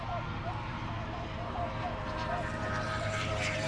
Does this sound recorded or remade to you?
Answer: remade